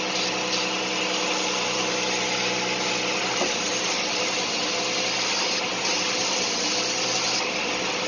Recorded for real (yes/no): yes